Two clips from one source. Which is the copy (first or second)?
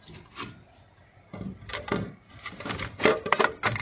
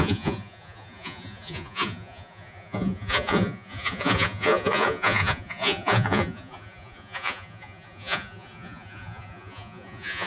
second